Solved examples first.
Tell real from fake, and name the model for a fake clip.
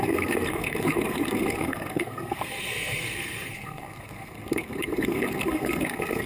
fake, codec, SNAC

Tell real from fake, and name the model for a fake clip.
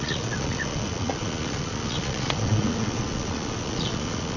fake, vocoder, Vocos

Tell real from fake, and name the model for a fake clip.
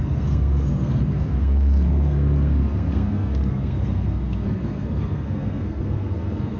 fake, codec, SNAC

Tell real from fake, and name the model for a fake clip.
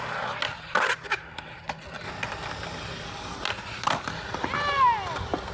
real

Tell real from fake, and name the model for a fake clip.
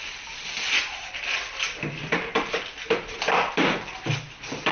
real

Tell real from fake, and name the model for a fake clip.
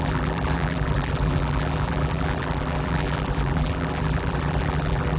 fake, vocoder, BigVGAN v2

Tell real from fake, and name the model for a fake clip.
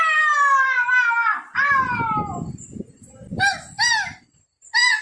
real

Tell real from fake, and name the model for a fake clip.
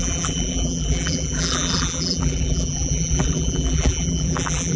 fake, vocoder, BigVGAN v2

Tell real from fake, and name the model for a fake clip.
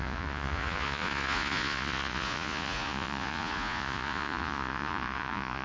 fake, vocoder, Vocos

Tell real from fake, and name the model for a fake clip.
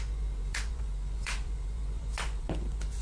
fake, vocoder, Vocos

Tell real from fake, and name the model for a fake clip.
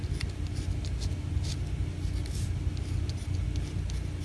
real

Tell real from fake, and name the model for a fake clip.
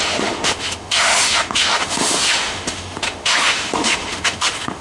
fake, autoencoder, DAC-VAE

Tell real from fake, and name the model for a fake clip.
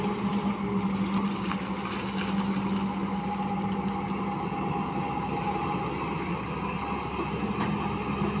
real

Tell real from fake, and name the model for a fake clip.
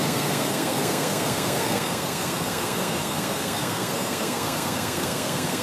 fake, codec, SNAC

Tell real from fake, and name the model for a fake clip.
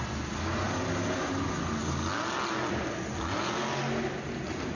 real